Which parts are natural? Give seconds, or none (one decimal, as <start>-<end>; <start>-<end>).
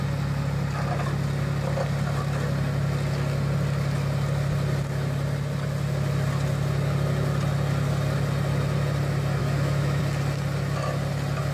0.0-9.4; 10.0-11.5